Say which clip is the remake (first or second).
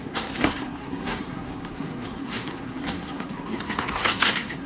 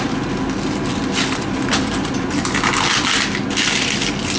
first